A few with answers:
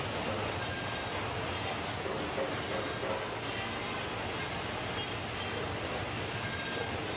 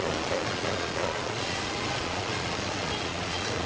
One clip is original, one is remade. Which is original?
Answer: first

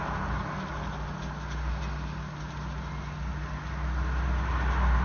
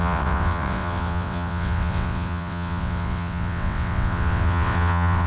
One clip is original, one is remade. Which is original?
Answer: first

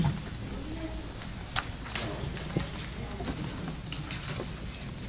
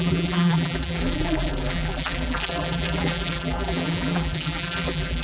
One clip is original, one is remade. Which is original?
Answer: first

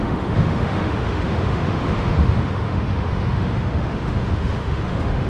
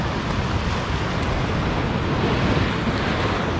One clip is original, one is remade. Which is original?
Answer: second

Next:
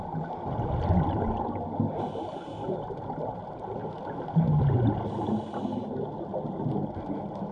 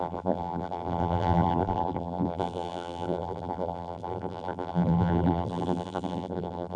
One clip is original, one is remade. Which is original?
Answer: first